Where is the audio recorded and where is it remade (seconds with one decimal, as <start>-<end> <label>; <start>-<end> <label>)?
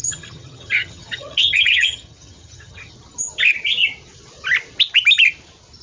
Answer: 0.0-2.9 remade; 2.9-5.8 recorded